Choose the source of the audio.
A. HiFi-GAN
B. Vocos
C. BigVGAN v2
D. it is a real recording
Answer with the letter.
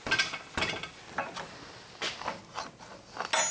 D